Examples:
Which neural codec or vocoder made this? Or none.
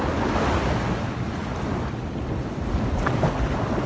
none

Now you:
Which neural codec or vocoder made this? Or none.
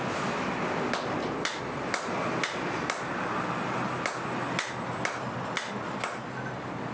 none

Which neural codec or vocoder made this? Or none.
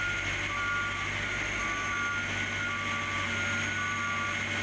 none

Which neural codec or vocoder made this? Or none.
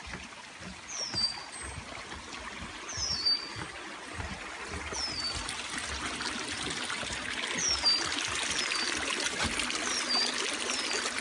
none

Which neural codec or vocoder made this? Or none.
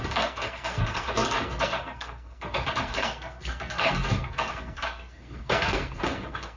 codec, SNAC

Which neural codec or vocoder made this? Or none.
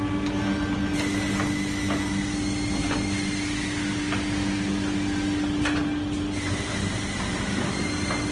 none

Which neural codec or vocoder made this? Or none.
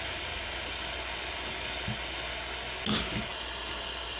none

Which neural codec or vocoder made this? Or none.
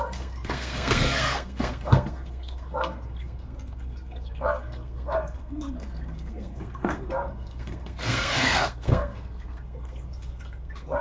codec, SNAC